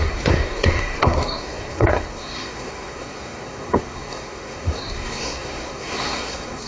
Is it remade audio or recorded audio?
remade